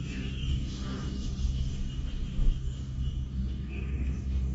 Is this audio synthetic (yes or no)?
yes